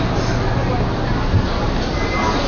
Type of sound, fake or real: real